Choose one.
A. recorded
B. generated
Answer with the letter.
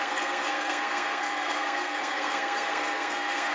B